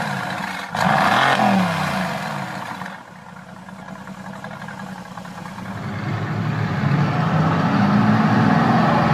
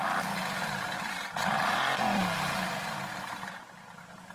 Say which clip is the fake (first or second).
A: second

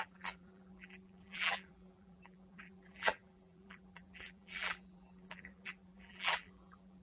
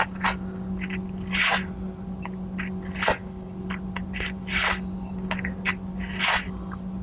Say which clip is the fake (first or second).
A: first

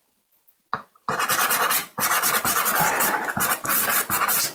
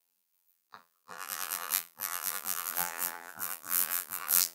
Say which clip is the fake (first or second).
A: second